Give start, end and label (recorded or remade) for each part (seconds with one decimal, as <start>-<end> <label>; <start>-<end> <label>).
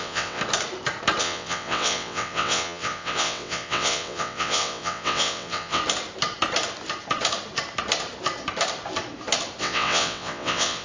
0.0-0.4 remade; 0.4-1.2 recorded; 1.2-5.8 remade; 5.8-9.6 recorded; 9.6-10.8 remade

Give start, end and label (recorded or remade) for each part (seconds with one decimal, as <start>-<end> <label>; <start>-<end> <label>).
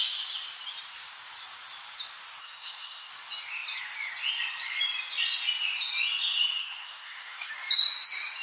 0.0-2.4 recorded; 2.4-3.1 remade; 3.1-6.6 recorded; 6.6-7.5 remade; 7.5-8.4 recorded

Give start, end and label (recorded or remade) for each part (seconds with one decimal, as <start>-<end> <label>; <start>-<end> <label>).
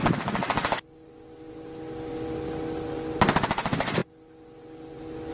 0.0-5.3 recorded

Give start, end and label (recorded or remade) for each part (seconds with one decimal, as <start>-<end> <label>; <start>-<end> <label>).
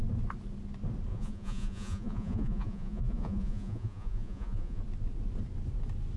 0.0-1.1 recorded; 1.1-4.8 remade; 4.8-6.2 recorded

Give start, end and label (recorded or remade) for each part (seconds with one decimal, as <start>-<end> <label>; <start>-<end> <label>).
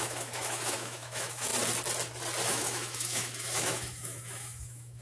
0.0-1.5 remade; 1.5-2.5 recorded; 2.5-5.0 remade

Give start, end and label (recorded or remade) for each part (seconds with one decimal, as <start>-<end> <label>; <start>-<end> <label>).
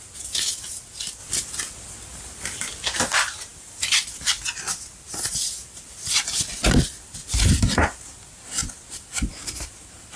0.0-10.2 recorded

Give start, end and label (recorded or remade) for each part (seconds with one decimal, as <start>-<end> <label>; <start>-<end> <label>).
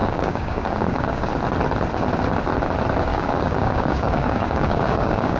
0.0-1.3 remade; 1.3-3.1 recorded; 3.1-5.4 remade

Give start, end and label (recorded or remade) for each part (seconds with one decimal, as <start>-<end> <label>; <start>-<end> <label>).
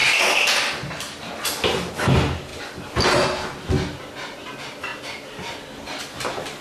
0.0-2.5 recorded; 2.5-3.1 remade; 3.1-6.6 recorded